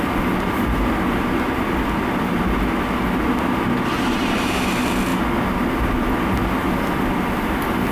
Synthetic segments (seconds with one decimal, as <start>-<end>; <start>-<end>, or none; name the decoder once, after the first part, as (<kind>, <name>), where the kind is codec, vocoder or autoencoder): none